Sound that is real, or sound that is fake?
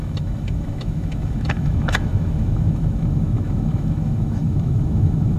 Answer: fake